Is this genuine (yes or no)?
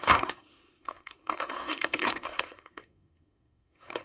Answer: no